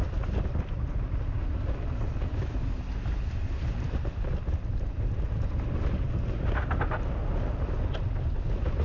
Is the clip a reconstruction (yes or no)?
no